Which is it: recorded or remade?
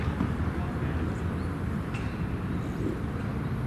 recorded